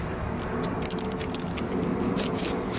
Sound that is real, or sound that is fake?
real